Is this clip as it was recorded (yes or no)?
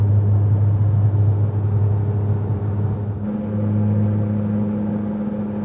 yes